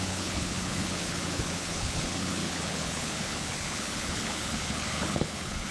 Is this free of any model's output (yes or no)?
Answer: no